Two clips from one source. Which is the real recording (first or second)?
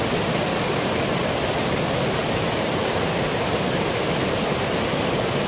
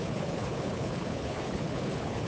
first